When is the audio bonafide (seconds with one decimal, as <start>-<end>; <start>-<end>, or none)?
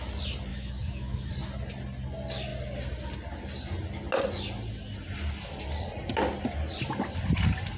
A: 0.0-0.5; 1.3-7.8